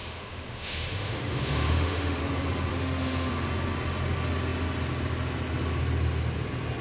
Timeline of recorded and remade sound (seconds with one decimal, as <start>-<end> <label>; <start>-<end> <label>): 0.0-2.2 remade; 2.2-2.7 recorded; 2.7-3.3 remade; 3.3-6.8 recorded